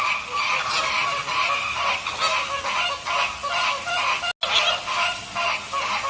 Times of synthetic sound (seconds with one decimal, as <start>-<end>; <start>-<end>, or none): none